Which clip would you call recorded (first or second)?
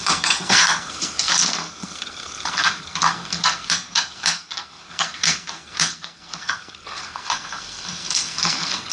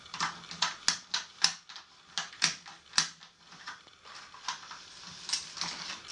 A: second